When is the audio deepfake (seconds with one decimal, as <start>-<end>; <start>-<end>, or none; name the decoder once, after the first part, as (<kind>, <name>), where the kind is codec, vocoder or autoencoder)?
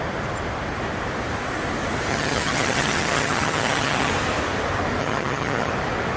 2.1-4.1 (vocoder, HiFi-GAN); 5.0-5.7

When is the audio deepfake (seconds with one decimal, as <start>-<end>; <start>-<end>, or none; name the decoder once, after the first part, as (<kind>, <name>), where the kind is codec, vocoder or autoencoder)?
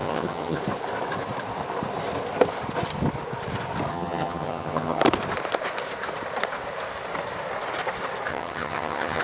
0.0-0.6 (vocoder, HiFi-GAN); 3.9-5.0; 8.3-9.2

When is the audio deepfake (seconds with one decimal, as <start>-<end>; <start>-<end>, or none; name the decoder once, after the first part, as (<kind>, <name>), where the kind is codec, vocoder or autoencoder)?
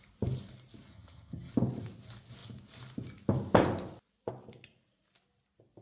0.9-1.5 (vocoder, HiFi-GAN)